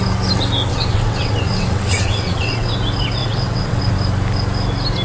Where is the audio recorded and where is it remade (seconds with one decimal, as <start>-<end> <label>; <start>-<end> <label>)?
0.0-0.7 recorded; 0.7-2.7 remade; 2.7-3.2 recorded; 3.2-3.8 remade; 3.8-5.0 recorded

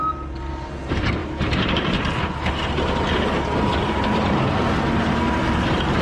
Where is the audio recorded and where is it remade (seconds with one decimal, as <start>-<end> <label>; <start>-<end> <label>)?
0.0-6.0 remade

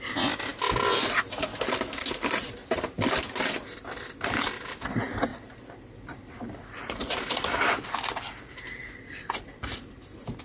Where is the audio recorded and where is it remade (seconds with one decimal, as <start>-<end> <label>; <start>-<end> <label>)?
0.0-0.5 remade; 0.5-2.5 recorded; 2.5-10.4 remade

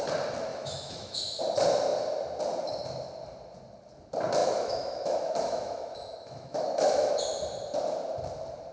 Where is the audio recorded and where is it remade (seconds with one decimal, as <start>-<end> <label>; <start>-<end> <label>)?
0.0-0.5 recorded; 0.5-1.4 remade; 1.4-4.4 recorded; 4.4-7.1 remade; 7.1-8.7 recorded